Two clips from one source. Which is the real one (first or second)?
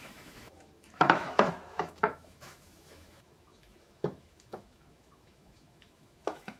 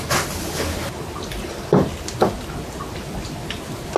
second